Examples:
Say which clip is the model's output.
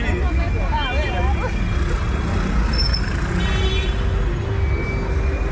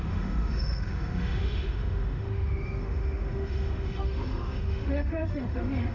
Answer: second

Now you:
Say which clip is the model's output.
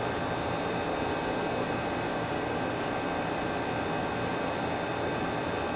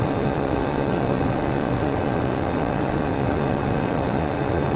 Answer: second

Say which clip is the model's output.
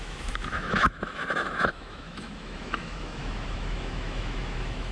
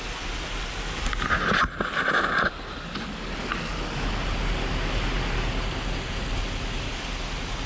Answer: first